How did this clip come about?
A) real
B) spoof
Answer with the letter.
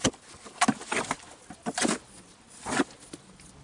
A